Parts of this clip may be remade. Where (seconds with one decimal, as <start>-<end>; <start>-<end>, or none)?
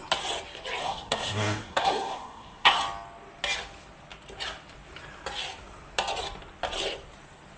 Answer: 0.8-2.8